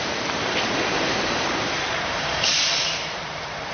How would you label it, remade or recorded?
remade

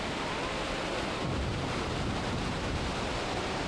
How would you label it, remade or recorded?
recorded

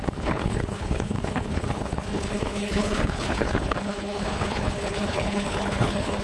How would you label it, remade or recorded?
remade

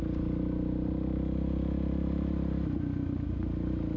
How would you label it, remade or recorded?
recorded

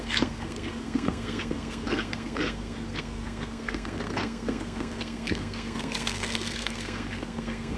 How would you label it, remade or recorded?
remade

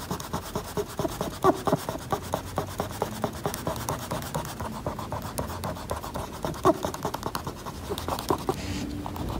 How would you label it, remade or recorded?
recorded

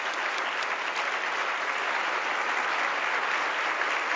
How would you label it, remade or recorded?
recorded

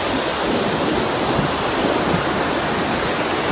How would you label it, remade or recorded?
recorded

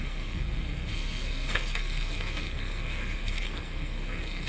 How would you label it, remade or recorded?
remade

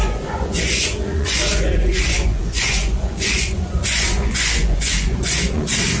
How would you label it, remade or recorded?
remade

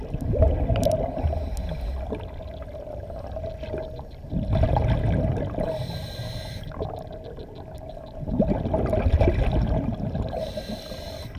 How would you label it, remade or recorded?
recorded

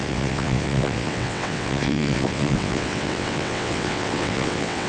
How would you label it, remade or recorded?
remade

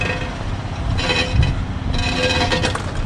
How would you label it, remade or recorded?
recorded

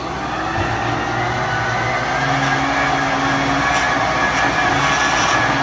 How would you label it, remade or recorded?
recorded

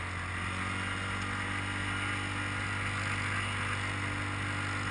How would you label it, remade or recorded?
recorded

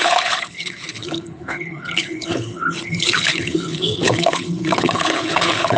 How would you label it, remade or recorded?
remade